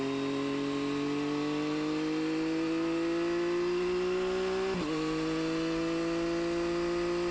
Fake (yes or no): no